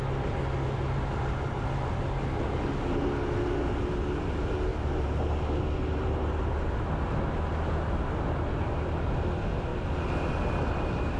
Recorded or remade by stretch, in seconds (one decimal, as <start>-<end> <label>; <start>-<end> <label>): 0.0-4.7 recorded; 4.7-5.4 remade; 5.4-11.2 recorded